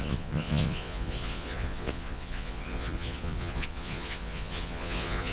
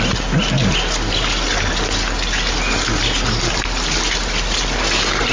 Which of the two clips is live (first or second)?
second